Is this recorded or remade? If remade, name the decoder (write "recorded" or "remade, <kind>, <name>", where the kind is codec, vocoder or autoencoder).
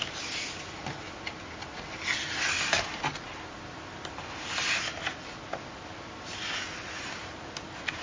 recorded